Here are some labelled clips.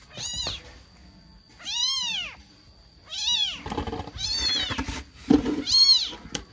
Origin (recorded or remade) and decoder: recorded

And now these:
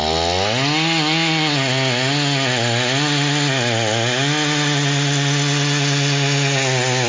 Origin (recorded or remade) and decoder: recorded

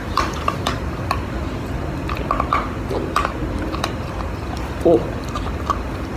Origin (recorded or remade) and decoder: recorded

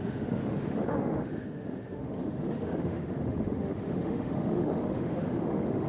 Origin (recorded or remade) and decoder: remade, autoencoder, DAC-VAE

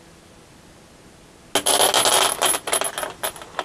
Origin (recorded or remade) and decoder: recorded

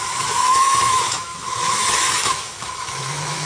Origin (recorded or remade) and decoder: remade, autoencoder, DAC-VAE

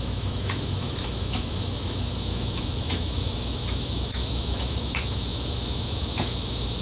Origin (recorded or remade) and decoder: remade, autoencoder, DAC-VAE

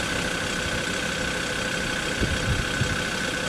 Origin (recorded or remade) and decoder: recorded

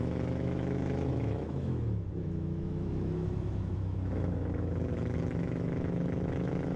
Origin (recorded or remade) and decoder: remade, autoencoder, DAC-VAE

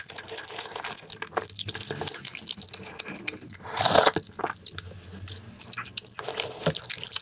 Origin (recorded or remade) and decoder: recorded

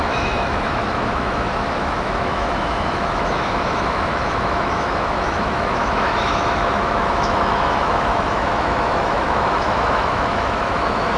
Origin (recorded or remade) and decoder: remade, autoencoder, DAC-VAE